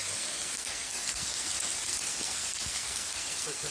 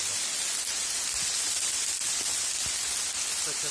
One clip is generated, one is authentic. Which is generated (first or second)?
first